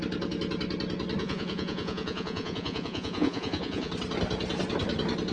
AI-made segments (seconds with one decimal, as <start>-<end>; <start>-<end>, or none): 1.2-3.9